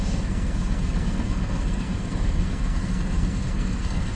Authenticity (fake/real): fake